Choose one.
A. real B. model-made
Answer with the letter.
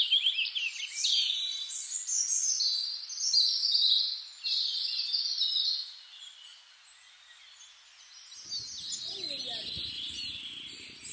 A